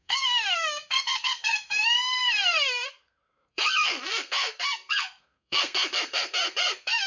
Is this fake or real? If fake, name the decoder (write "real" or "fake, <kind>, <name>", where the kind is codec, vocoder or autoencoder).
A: fake, codec, SNAC